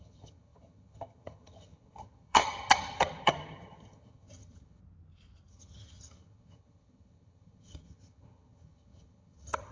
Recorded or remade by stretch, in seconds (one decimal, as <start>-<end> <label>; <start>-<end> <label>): 0.0-4.8 remade; 4.8-5.5 recorded; 5.5-9.7 remade